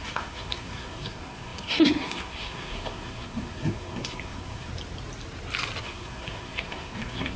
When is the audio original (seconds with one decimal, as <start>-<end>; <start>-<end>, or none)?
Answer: 4.7-5.8